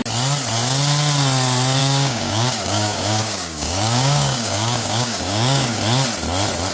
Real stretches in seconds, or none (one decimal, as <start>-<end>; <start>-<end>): 0.0-1.8; 5.8-6.7